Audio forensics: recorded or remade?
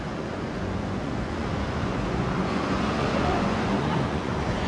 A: remade